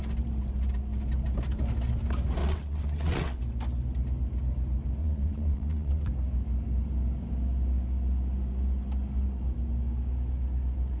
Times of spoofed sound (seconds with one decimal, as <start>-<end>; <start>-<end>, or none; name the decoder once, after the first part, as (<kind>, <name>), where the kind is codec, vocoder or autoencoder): 2.4-3.4 (vocoder, WaveNeXt); 5.0-6.1